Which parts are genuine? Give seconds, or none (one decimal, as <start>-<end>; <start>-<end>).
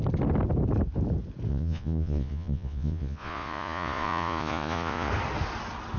0.0-1.5; 5.1-6.0